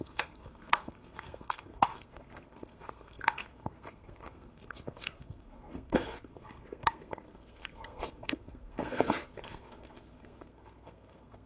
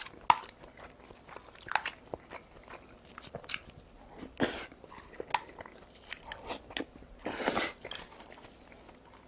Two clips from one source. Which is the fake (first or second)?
first